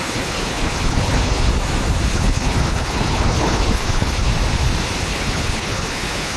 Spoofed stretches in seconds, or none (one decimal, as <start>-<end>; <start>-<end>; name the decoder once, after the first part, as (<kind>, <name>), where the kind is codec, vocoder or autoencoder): 0.0-1.5 (codec, HILCodec); 2.1-4.3; 5.0-6.4